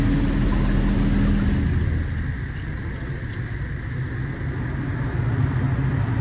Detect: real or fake real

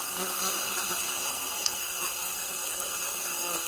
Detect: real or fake fake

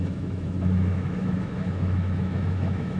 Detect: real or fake fake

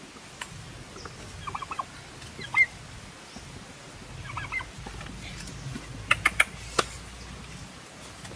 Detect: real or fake real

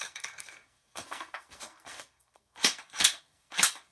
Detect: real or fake fake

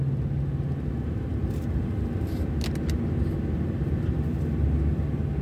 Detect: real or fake real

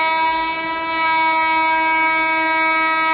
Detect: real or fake real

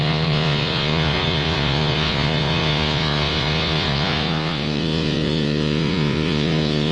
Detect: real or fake fake